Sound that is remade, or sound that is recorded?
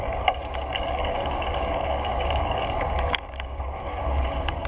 remade